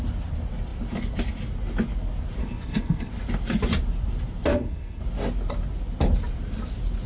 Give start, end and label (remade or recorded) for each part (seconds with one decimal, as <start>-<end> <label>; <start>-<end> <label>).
0.0-2.4 recorded; 2.4-3.1 remade; 3.1-4.5 recorded; 4.5-5.0 remade; 5.0-7.1 recorded